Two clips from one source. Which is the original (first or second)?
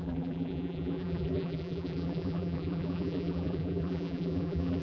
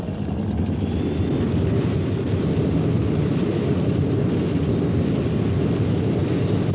second